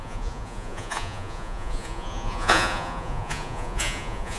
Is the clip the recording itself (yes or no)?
no